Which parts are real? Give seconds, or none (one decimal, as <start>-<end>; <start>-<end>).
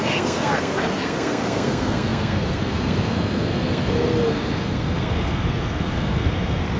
none